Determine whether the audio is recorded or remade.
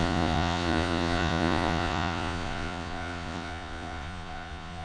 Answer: remade